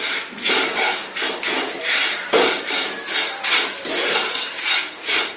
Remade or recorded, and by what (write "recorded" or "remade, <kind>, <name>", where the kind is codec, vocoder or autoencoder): remade, vocoder, BigVGAN v2